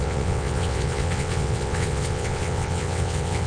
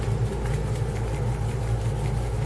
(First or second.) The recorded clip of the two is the second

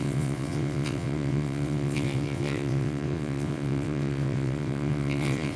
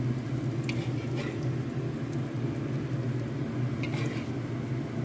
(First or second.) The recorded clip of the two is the second